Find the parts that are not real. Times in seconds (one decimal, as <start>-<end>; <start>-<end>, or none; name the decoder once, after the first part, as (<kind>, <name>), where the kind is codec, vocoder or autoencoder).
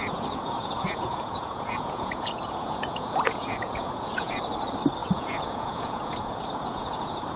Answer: 0.0-4.4 (vocoder, Vocos); 5.0-7.4